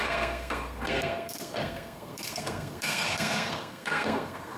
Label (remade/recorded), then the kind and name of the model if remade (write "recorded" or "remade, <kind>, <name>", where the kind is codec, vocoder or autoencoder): remade, codec, SNAC